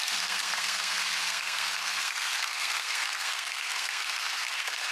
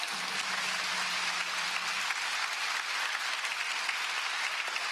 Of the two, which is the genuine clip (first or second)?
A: second